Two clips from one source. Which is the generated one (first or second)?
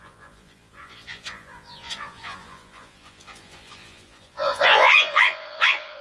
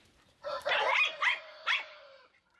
first